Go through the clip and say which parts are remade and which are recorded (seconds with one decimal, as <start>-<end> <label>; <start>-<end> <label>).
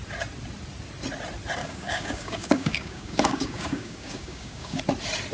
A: 0.0-1.6 recorded; 1.6-4.8 remade; 4.8-5.3 recorded